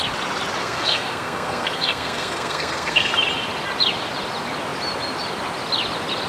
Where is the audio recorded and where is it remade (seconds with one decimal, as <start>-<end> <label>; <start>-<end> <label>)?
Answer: 0.0-0.6 recorded; 0.6-3.1 remade; 3.1-6.3 recorded